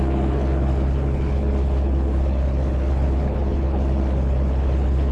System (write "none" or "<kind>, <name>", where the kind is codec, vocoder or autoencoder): codec, HILCodec